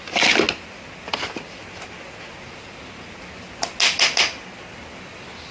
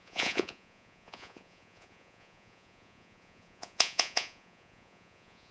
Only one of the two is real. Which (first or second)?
first